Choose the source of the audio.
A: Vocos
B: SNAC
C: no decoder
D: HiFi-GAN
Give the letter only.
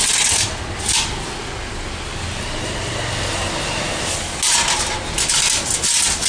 C